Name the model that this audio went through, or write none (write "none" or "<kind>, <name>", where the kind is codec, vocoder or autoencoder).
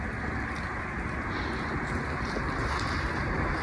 none